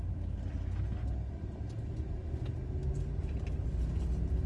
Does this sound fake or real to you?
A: real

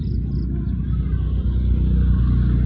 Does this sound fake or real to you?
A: real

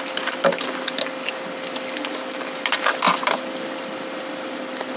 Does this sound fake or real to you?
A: real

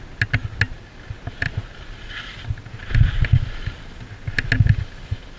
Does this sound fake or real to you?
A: real